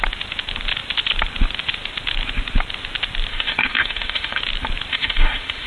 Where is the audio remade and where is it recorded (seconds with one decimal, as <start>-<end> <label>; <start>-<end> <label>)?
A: 0.0-3.3 recorded; 3.3-4.4 remade; 4.4-4.9 recorded; 4.9-5.7 remade